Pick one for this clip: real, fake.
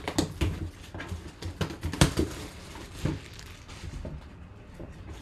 real